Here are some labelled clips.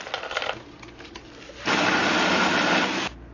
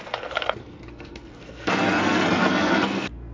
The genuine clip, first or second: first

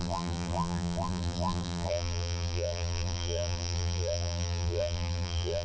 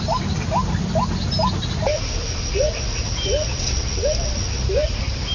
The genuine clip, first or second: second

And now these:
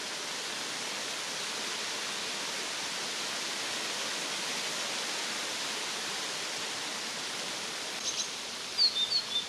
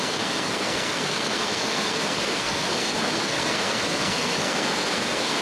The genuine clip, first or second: first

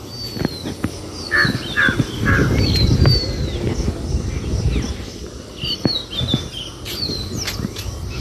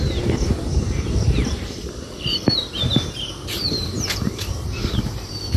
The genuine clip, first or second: first